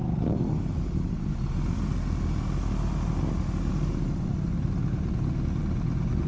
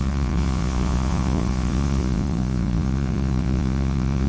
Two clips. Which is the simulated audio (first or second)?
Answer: second